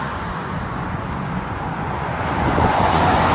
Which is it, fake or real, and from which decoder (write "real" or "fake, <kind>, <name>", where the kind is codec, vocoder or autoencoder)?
fake, vocoder, Vocos